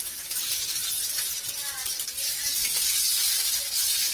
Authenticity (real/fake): real